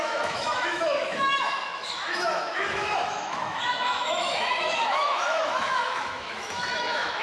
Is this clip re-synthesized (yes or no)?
yes